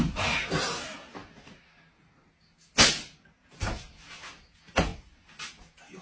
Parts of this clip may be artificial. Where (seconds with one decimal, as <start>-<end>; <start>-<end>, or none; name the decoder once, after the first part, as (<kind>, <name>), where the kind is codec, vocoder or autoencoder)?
none